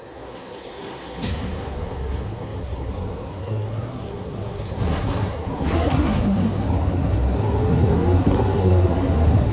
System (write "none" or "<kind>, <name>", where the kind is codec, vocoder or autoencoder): codec, SNAC